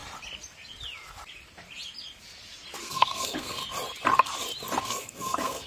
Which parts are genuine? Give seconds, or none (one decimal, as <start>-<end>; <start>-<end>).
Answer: 0.0-2.8; 3.6-4.8